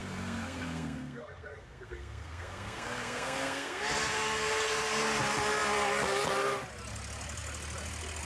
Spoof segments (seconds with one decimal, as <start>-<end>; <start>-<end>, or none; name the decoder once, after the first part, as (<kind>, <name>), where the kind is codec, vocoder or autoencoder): 0.0-3.8 (codec, SNAC)